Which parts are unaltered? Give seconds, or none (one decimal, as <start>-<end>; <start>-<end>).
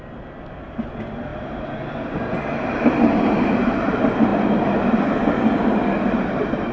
0.0-6.7